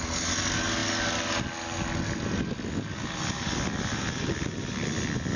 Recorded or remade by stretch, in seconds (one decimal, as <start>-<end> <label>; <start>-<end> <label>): 0.0-5.4 recorded